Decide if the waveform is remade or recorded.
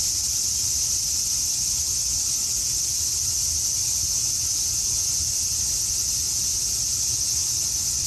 recorded